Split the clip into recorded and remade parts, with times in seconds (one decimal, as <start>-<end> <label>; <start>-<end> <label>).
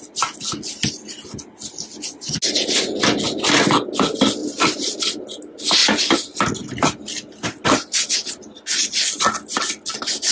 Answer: 0.0-4.4 recorded; 4.4-5.0 remade; 5.0-10.3 recorded